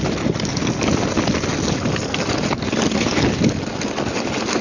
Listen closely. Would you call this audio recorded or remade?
recorded